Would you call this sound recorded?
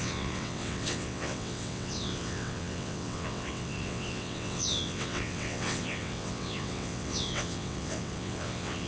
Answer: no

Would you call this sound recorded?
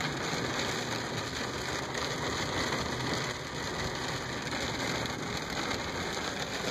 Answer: yes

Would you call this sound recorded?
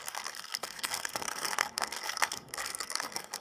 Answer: no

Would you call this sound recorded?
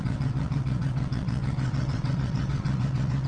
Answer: no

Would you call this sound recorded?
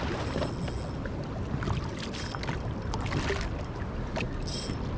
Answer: yes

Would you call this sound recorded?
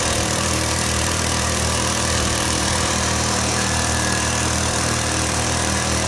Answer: no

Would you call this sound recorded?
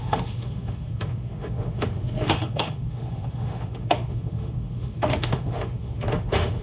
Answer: no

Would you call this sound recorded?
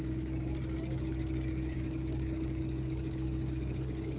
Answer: no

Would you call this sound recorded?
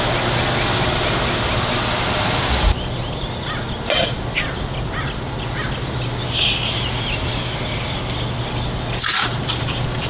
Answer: yes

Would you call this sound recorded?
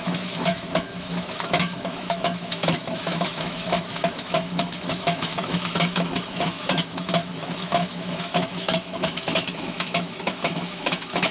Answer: no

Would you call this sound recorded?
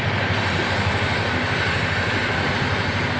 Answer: yes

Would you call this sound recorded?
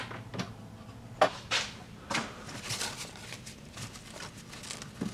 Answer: yes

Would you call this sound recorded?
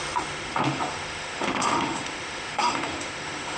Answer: no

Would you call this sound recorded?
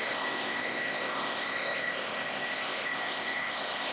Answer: no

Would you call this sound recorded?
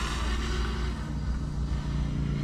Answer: yes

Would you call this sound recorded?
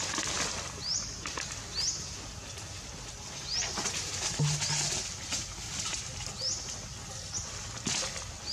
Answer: yes